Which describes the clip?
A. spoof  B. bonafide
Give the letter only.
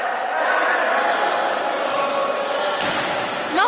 B